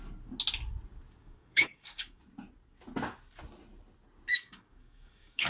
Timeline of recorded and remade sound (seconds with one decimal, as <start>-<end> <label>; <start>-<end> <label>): 0.0-1.2 recorded; 1.2-2.2 remade; 2.2-4.3 recorded; 4.3-5.5 remade